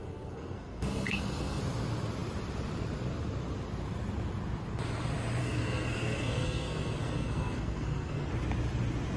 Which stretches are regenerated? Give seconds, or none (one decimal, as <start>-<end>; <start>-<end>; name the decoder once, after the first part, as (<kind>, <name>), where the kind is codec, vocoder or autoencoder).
0.0-1.6 (codec, SNAC); 5.4-8.3